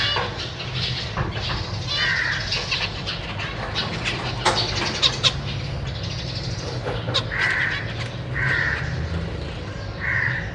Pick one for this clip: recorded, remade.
recorded